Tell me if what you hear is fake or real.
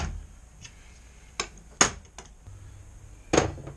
real